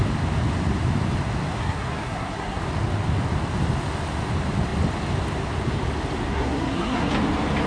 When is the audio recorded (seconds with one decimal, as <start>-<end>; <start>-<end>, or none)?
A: 0.0-1.6; 2.6-6.3; 7.1-7.7